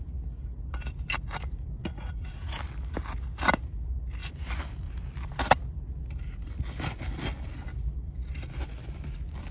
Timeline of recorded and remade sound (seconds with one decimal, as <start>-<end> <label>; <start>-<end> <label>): 0.0-1.8 recorded; 1.8-2.5 remade; 2.5-9.5 recorded